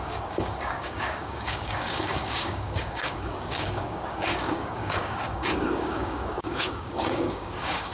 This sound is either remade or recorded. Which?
remade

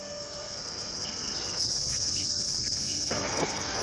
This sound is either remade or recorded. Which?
remade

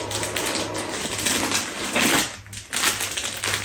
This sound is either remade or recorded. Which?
recorded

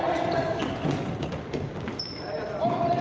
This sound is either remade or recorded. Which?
recorded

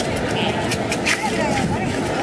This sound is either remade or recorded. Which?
recorded